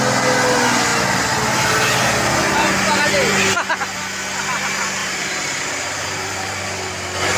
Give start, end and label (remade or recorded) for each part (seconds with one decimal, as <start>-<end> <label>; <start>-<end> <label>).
0.0-5.0 recorded; 5.0-6.6 remade; 6.6-7.4 recorded